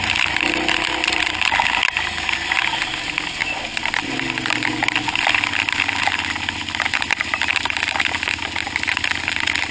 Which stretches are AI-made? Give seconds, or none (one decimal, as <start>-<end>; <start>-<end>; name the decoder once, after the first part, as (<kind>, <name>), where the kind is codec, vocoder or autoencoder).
none